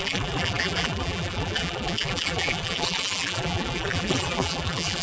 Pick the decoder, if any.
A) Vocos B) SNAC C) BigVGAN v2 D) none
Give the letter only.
C